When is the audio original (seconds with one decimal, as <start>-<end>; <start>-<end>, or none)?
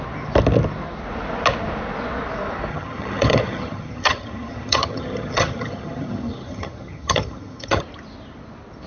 0.0-2.7; 7.8-8.9